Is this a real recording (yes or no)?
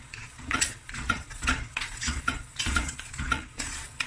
no